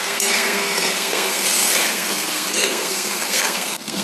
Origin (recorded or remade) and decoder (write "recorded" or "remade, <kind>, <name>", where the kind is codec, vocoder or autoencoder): remade, codec, SNAC